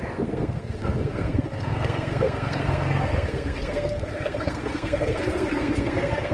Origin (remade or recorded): remade